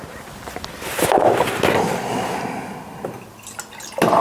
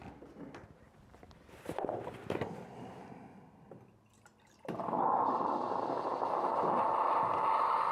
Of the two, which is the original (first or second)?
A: first